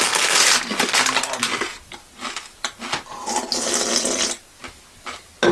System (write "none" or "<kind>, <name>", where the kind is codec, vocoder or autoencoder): none